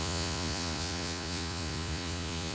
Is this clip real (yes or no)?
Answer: no